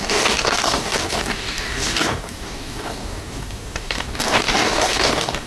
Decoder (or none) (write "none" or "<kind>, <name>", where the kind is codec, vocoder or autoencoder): codec, DAC